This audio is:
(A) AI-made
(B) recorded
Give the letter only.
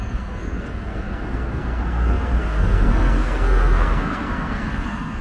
A